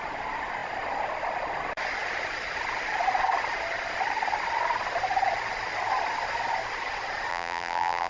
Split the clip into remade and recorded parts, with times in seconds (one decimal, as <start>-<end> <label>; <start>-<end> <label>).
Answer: 0.0-7.3 recorded; 7.3-8.1 remade

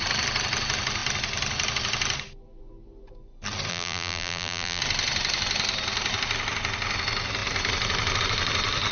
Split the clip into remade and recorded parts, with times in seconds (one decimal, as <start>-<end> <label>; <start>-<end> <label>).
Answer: 0.0-3.7 recorded; 3.7-4.8 remade; 4.8-8.9 recorded

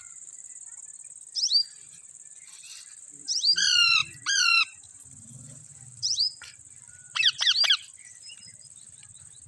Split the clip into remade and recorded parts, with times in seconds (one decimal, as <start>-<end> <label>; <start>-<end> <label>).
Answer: 0.0-0.5 remade; 0.5-1.8 recorded; 1.8-7.2 remade; 7.2-8.1 recorded; 8.1-9.5 remade

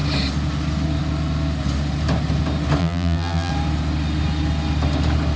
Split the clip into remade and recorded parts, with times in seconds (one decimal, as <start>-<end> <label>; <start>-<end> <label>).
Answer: 0.0-2.8 recorded; 2.8-3.5 remade; 3.5-5.4 recorded

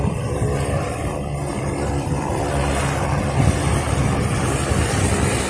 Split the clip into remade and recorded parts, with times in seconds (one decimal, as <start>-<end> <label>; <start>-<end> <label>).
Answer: 0.0-1.5 recorded; 1.5-2.3 remade; 2.3-5.5 recorded